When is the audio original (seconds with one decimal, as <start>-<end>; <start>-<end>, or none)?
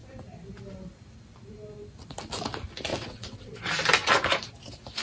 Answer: 0.0-2.9; 3.6-5.0